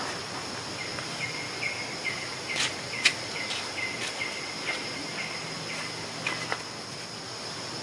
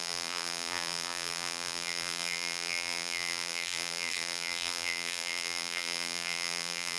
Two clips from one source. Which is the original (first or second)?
first